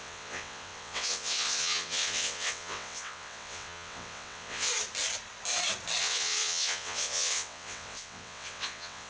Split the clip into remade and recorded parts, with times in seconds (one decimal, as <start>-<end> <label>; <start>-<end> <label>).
0.0-4.7 remade; 4.7-6.0 recorded; 6.0-9.1 remade

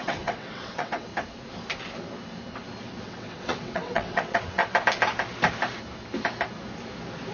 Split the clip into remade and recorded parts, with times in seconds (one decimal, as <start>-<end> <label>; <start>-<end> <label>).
0.0-1.1 remade; 1.1-3.0 recorded; 3.0-4.6 remade; 4.6-7.3 recorded

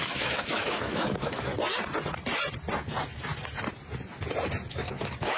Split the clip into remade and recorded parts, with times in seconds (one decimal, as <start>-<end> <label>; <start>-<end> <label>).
0.0-1.5 remade; 1.5-4.7 recorded; 4.7-5.4 remade

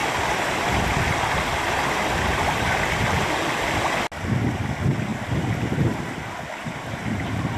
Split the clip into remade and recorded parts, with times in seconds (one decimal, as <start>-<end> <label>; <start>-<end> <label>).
0.0-7.6 recorded

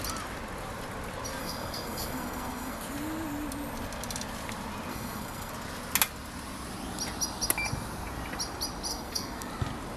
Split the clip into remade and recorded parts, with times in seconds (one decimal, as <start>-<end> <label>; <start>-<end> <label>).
0.0-1.4 recorded; 1.4-2.8 remade; 2.8-4.9 recorded; 4.9-5.5 remade; 5.5-8.9 recorded; 8.9-9.5 remade; 9.5-10.0 recorded

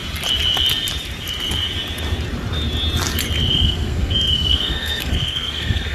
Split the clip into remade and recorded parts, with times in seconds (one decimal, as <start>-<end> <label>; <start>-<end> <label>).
0.0-3.5 recorded; 3.5-5.9 remade

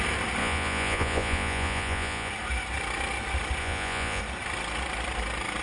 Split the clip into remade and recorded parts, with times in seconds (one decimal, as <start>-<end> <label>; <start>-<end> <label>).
0.0-0.4 recorded; 0.4-2.3 remade; 2.3-3.6 recorded; 3.6-4.2 remade; 4.2-5.6 recorded

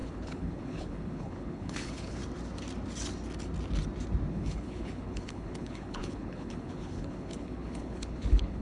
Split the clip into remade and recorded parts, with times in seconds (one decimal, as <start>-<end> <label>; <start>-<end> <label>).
0.0-2.2 remade; 2.2-4.3 recorded; 4.3-8.6 remade